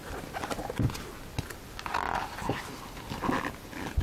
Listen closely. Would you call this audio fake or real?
real